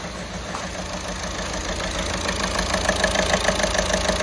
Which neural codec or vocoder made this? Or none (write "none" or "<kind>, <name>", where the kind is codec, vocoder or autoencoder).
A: none